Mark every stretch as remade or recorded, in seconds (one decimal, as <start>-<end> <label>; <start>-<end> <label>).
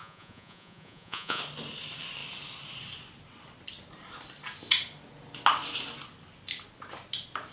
0.0-1.4 remade; 1.4-7.5 recorded